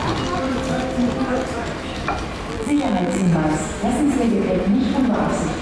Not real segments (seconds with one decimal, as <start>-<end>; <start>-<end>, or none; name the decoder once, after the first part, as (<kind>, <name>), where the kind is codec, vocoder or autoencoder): 2.5-3.3 (vocoder, BigVGAN v2)